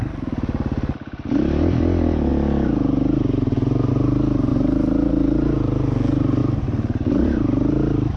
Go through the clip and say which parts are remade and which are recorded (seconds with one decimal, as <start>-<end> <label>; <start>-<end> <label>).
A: 0.0-6.4 recorded; 6.4-8.2 remade

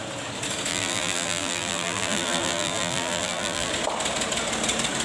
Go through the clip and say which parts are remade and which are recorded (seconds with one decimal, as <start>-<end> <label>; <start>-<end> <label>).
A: 0.0-0.7 recorded; 0.7-3.7 remade; 3.7-5.0 recorded

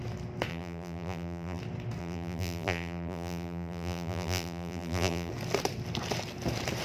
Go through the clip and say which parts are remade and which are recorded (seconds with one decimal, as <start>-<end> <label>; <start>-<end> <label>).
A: 0.0-0.5 recorded; 0.5-1.6 remade; 1.6-2.0 recorded; 2.0-5.3 remade; 5.3-6.8 recorded

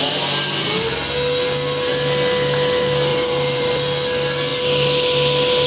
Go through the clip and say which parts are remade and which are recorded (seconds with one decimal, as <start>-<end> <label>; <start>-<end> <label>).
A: 0.0-3.1 recorded; 3.1-3.7 remade; 3.7-5.7 recorded

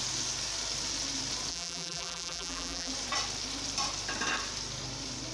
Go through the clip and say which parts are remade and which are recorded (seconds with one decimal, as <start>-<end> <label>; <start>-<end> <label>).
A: 0.0-1.5 recorded; 1.5-2.9 remade; 2.9-5.3 recorded